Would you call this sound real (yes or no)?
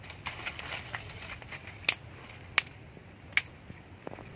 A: yes